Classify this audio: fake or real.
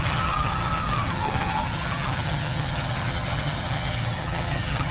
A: fake